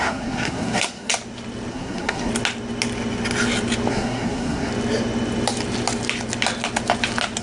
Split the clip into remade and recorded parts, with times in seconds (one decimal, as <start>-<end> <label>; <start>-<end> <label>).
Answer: 0.0-1.1 remade; 1.1-1.7 recorded; 1.7-2.3 remade; 2.3-3.9 recorded; 3.9-4.7 remade; 4.7-7.4 recorded